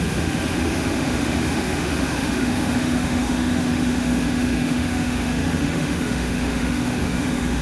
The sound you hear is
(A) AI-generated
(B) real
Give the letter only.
A